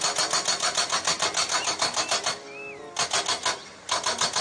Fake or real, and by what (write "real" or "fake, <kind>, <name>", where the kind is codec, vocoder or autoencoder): real